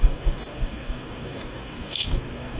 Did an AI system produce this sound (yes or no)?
yes